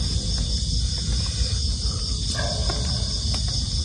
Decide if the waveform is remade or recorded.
recorded